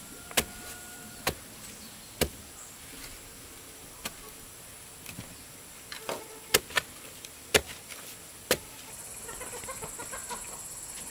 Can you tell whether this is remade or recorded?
recorded